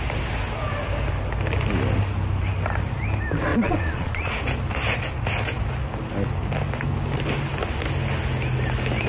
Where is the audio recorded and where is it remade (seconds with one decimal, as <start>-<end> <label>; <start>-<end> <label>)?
0.0-3.5 recorded; 3.5-4.3 remade; 4.3-9.1 recorded